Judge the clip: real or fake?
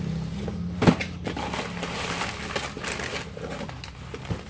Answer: real